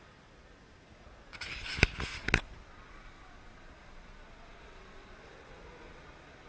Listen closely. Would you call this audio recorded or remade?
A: recorded